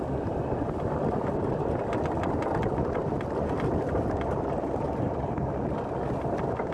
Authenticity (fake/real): real